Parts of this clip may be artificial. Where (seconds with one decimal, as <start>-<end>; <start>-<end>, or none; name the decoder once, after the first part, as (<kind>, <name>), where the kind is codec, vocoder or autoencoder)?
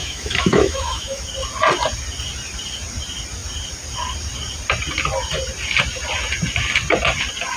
0.0-1.2 (autoencoder, DAC-VAE)